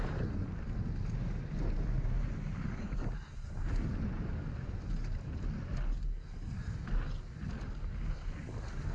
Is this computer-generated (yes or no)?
no